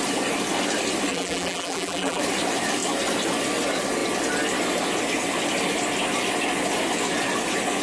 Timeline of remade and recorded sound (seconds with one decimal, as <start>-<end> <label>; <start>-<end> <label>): 0.0-1.1 recorded; 1.1-2.2 remade; 2.2-7.8 recorded

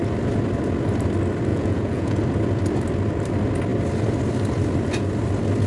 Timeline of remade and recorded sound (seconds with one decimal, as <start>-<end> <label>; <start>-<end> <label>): 0.0-1.5 recorded; 1.5-2.2 remade; 2.2-5.7 recorded

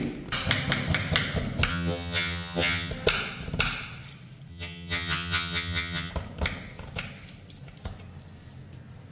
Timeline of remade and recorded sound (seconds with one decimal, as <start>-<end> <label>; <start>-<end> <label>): 0.0-1.7 recorded; 1.7-2.9 remade; 2.9-4.5 recorded; 4.5-6.1 remade; 6.1-9.1 recorded

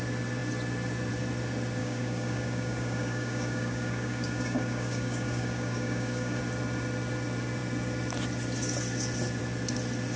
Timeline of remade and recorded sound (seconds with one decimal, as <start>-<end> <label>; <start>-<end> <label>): 0.0-1.8 recorded; 1.8-6.4 remade; 6.4-10.2 recorded